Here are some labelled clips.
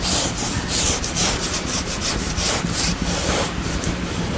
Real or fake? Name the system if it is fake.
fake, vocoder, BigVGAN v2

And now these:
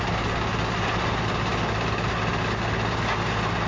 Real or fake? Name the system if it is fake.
real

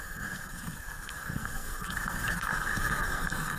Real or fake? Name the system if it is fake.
fake, codec, SNAC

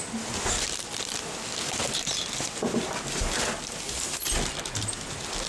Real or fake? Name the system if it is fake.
real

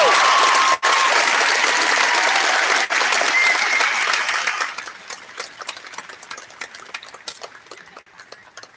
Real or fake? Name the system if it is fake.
real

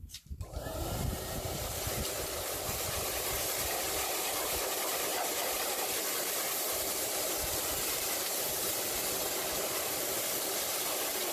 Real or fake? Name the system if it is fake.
fake, vocoder, BigVGAN v2